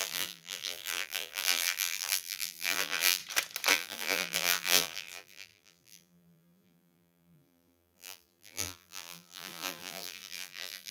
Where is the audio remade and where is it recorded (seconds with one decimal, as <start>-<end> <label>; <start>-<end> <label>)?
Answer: 0.0-3.2 remade; 3.2-3.7 recorded; 3.7-10.9 remade